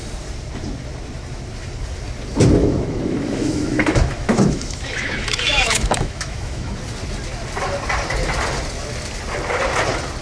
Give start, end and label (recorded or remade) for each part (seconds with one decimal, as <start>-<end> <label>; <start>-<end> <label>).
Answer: 0.0-2.6 recorded; 2.6-6.8 remade; 6.8-10.2 recorded